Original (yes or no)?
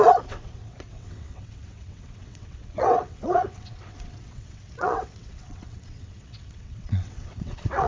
no